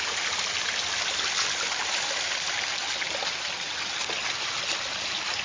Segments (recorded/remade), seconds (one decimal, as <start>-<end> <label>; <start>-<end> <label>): 0.0-5.4 recorded